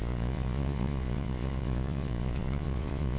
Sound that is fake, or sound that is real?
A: fake